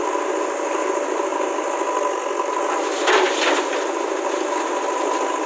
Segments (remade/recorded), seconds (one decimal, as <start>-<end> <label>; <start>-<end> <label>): 0.0-5.5 recorded

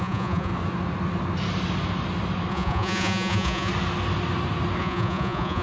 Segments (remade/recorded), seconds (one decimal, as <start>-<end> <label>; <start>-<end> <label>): 0.0-0.5 remade; 0.5-2.5 recorded; 2.5-3.7 remade; 3.7-4.8 recorded; 4.8-5.6 remade

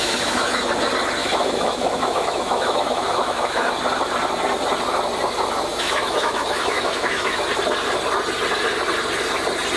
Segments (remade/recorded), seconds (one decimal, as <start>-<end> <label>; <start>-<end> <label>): 0.0-0.6 remade; 0.6-1.2 recorded; 1.2-3.7 remade; 3.7-5.7 recorded; 5.7-7.5 remade; 7.5-9.8 recorded